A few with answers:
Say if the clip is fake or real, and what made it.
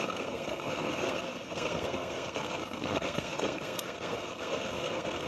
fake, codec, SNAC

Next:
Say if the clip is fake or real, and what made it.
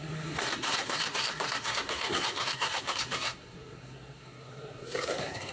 fake, codec, SNAC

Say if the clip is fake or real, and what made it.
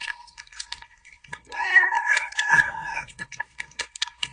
fake, codec, SNAC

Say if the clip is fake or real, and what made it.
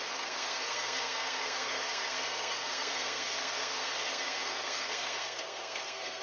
fake, codec, SNAC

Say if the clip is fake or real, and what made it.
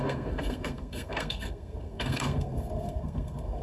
fake, codec, SNAC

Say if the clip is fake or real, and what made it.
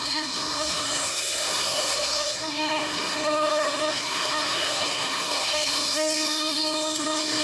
fake, codec, SNAC